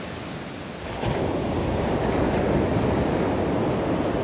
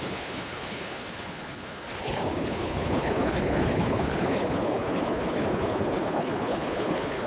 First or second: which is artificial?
second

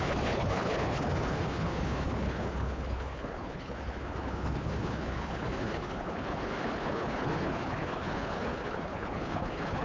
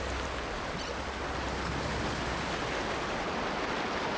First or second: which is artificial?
first